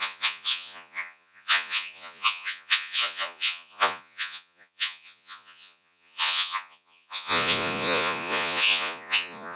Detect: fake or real fake